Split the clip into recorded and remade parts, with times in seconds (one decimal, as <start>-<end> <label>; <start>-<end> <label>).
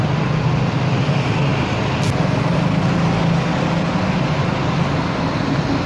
0.0-5.9 recorded